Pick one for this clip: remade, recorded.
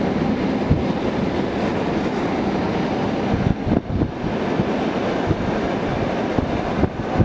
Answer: recorded